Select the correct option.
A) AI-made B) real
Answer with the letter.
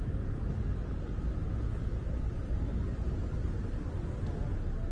B